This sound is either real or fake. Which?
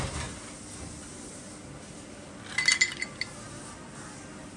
real